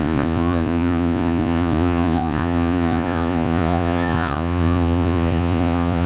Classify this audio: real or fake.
fake